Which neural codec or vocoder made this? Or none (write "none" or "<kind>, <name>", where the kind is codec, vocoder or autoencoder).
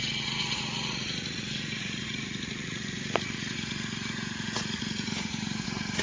vocoder, Vocos